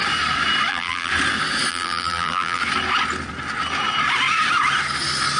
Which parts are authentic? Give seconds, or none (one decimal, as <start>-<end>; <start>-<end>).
0.0-0.7; 1.1-1.7; 2.6-5.4